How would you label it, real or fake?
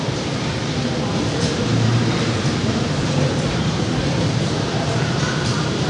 fake